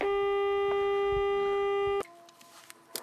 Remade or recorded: recorded